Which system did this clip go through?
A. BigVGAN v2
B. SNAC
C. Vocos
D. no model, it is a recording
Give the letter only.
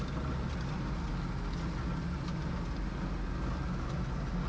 D